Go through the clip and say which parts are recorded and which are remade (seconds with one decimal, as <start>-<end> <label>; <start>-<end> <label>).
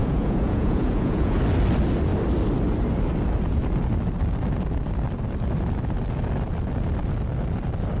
0.0-1.4 remade; 1.4-8.0 recorded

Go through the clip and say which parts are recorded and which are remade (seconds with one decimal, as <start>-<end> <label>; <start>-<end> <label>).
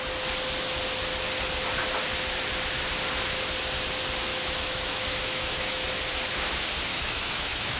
0.0-4.3 recorded; 4.3-5.9 remade; 5.9-6.9 recorded; 6.9-7.8 remade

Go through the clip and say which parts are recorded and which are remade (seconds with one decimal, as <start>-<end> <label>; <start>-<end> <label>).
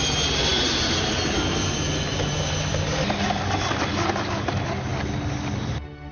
0.0-6.1 recorded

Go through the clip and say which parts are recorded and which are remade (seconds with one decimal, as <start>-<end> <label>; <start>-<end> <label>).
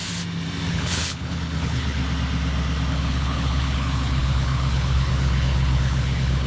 0.0-0.7 recorded; 0.7-2.0 remade; 2.0-2.9 recorded; 2.9-6.5 remade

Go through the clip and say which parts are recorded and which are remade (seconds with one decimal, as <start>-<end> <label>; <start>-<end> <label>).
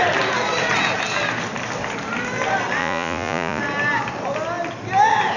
0.0-2.8 recorded; 2.8-3.6 remade; 3.6-5.4 recorded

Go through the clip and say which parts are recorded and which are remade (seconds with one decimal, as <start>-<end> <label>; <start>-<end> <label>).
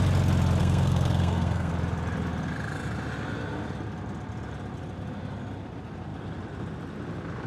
0.0-0.6 recorded; 0.6-1.7 remade; 1.7-7.5 recorded